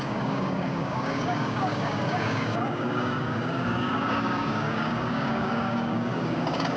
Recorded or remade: remade